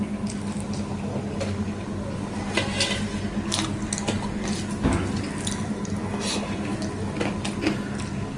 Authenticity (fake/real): real